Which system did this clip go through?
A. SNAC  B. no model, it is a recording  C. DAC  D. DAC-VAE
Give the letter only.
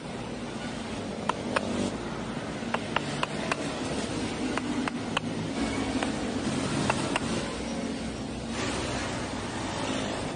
B